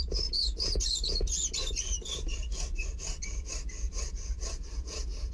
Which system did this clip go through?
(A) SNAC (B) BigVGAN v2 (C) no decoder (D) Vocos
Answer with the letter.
C